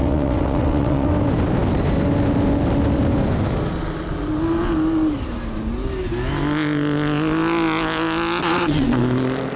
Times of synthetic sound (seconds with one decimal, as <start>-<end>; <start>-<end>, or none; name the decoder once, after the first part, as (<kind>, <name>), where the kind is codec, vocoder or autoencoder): 0.0-1.1 (vocoder, WaveNeXt); 8.4-9.0